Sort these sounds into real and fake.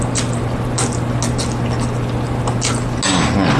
real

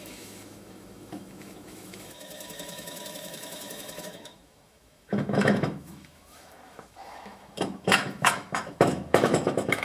fake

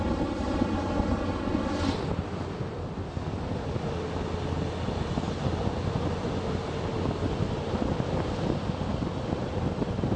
real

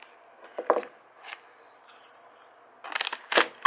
real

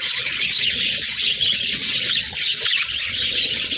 fake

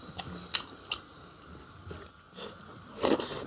real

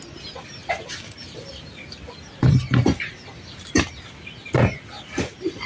real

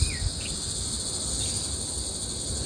real